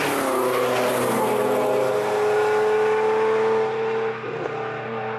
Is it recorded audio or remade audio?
recorded